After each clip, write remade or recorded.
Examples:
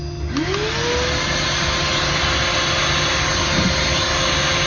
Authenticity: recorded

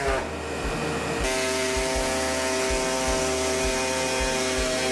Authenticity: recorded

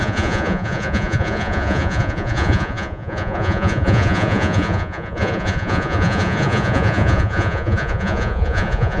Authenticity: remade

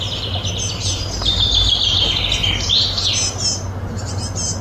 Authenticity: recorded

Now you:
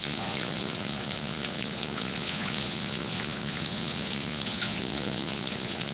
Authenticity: remade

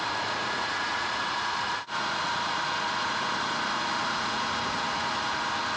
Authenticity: remade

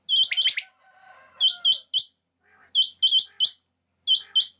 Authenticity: recorded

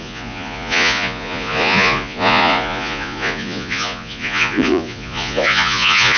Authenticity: remade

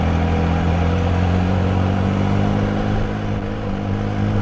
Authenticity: recorded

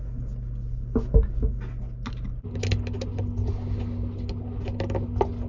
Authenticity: recorded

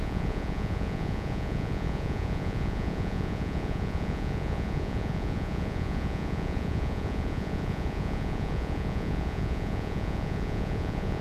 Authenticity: remade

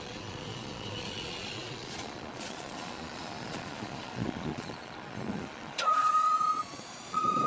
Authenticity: remade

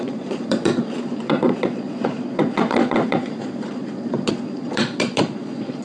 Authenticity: remade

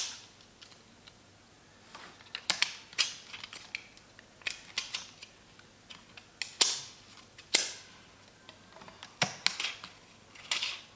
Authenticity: recorded